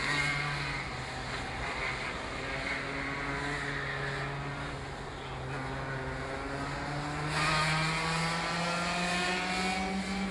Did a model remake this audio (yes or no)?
no